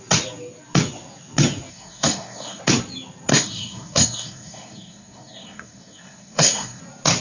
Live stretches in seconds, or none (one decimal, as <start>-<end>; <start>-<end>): 0.0-1.7; 2.6-3.3; 6.8-7.2